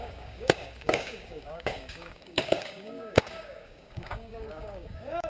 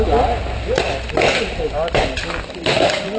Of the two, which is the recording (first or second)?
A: second